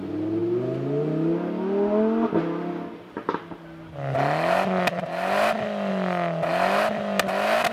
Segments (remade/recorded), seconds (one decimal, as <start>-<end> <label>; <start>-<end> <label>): 0.0-7.7 recorded